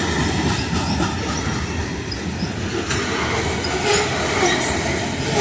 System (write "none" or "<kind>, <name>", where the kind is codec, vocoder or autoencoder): none